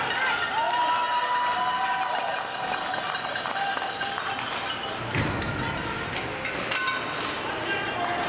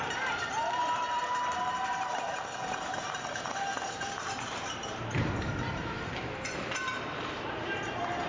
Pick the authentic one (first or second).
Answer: first